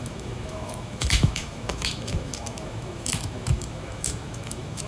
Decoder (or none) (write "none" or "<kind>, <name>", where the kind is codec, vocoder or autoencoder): autoencoder, DAC-VAE